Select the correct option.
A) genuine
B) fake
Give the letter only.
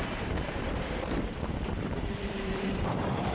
B